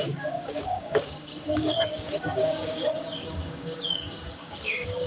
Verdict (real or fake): fake